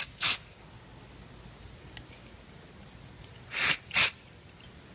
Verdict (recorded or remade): recorded